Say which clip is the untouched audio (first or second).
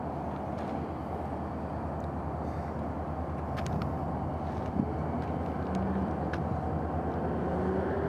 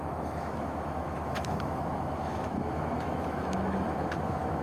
first